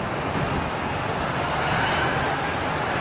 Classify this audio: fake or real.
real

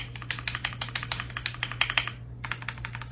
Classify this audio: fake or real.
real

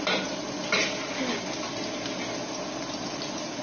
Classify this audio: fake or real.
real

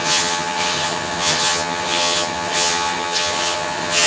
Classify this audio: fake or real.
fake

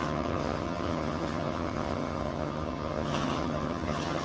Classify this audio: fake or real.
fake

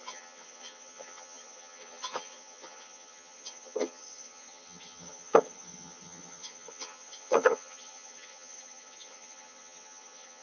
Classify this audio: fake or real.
fake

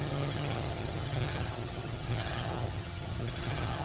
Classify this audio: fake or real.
fake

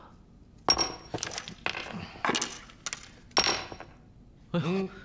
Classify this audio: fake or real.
real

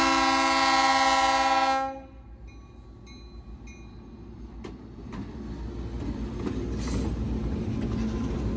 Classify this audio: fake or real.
real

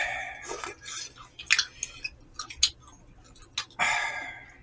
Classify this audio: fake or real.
real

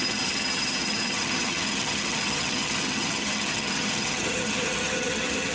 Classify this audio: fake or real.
fake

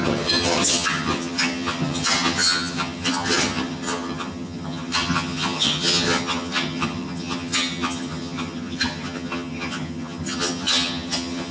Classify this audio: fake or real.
fake